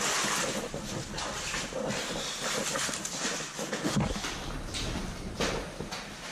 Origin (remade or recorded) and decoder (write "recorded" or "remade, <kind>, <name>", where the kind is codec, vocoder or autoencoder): recorded